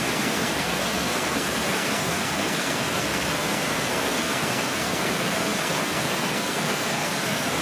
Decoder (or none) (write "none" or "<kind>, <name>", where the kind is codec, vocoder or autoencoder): codec, SNAC